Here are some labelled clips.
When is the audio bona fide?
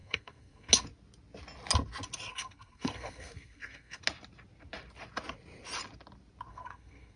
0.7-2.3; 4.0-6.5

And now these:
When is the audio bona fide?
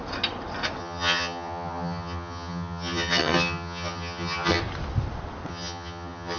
0.0-0.8; 4.6-5.5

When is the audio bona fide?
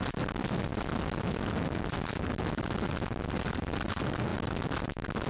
0.0-5.3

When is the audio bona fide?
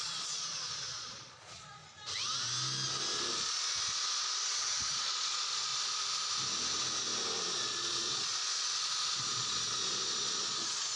1.8-4.2; 5.7-7.4; 8.3-9.1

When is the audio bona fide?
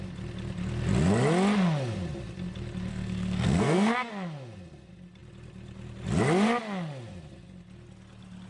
0.0-2.9; 4.1-8.5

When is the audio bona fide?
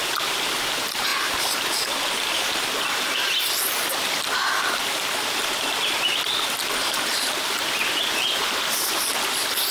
1.1-2.6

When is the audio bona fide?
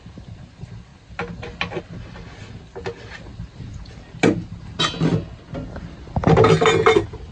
0.0-7.3